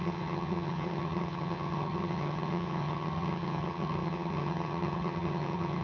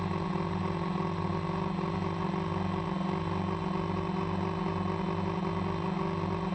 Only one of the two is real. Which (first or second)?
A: second